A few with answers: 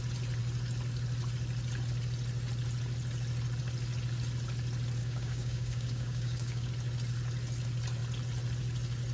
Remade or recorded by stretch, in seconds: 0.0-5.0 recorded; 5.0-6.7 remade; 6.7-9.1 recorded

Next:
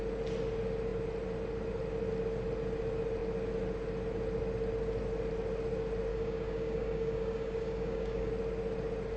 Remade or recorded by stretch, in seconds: 0.0-6.1 recorded; 6.1-8.3 remade; 8.3-9.2 recorded

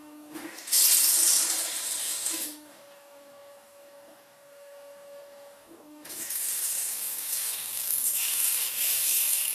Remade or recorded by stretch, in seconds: 0.0-0.8 remade; 0.8-2.0 recorded; 2.0-9.5 remade

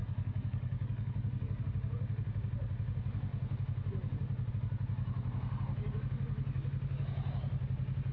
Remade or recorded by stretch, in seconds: 0.0-1.6 remade; 1.6-8.1 recorded